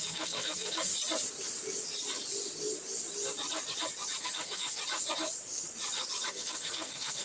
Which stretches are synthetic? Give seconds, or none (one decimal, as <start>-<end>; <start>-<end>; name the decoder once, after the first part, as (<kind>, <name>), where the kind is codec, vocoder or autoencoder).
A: 0.0-0.9 (codec, SNAC); 4.2-4.8; 6.3-7.2